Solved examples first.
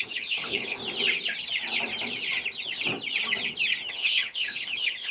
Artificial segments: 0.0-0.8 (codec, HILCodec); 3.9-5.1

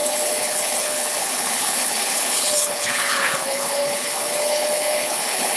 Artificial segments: 0.0-5.6 (codec, HILCodec)

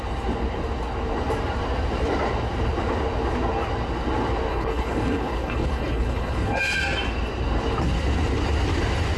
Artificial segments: 4.5-6.6 (codec, HILCodec)

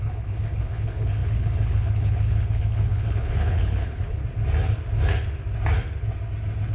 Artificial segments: 0.0-4.2 (codec, HILCodec)

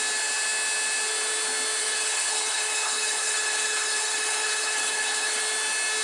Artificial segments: 1.8-5.4 (codec, HILCodec)

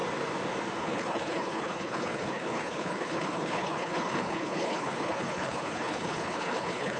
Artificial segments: 0.8-7.0 (codec, HILCodec)